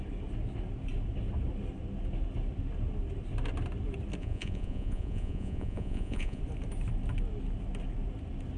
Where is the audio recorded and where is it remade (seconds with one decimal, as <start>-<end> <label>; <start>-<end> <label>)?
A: 0.0-4.2 recorded; 4.2-6.4 remade; 6.4-8.6 recorded